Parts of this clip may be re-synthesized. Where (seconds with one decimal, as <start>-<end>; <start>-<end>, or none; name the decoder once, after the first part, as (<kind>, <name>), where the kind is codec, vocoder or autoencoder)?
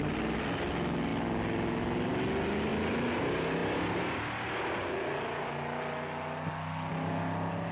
none